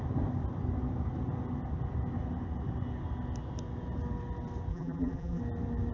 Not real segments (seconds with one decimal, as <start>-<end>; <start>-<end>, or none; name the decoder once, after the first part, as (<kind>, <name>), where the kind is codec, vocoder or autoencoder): 4.7-5.4 (vocoder, BigVGAN v2)